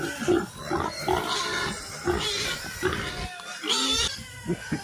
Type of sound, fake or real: real